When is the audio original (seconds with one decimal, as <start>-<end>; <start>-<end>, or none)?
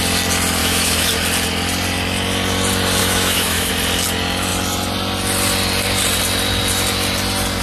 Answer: 0.0-0.6; 1.1-3.0; 3.7-7.6